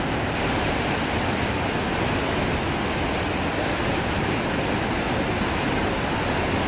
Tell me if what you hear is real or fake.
real